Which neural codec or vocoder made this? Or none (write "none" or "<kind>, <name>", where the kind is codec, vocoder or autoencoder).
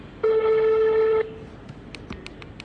none